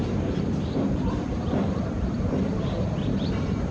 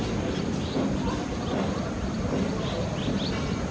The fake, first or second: first